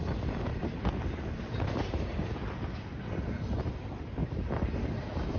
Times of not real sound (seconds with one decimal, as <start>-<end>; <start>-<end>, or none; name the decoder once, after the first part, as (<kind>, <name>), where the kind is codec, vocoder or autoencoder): none